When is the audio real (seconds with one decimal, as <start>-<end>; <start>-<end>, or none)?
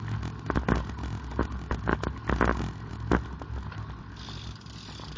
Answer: 0.0-5.2